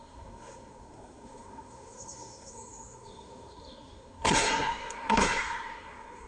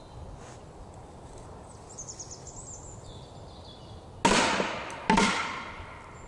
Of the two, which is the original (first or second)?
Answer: second